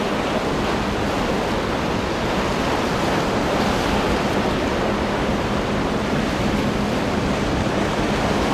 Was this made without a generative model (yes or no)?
yes